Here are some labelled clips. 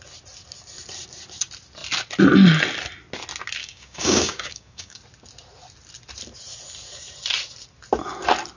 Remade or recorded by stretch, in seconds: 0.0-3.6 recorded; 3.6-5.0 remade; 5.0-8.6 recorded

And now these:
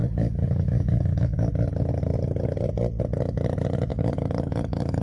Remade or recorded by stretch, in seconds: 0.0-1.5 remade; 1.5-3.9 recorded; 3.9-5.0 remade

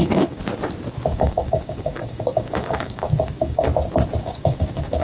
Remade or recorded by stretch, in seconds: 0.0-0.4 remade; 0.4-1.1 recorded; 1.1-3.7 remade; 3.7-4.2 recorded; 4.2-5.0 remade